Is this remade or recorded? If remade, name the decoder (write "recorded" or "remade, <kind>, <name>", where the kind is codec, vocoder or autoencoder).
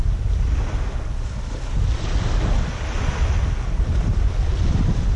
recorded